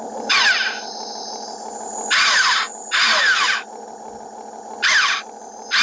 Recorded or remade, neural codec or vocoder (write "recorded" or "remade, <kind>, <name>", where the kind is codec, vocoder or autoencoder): recorded